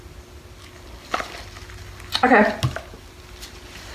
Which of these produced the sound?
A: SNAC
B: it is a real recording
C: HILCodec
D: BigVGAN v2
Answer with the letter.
B